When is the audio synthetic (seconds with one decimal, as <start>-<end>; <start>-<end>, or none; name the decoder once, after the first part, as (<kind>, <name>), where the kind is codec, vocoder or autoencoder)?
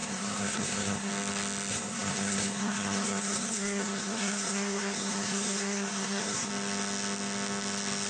0.0-1.1 (codec, SNAC); 1.7-6.5